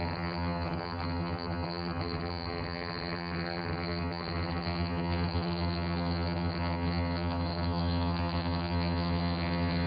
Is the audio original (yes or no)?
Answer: no